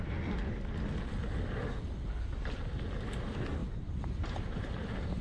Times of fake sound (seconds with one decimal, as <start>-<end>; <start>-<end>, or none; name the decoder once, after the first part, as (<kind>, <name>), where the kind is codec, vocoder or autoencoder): 3.6-5.2 (vocoder, BigVGAN v2)